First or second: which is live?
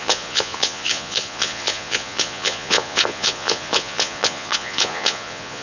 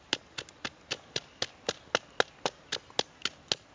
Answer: second